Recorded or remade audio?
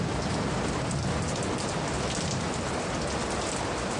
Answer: recorded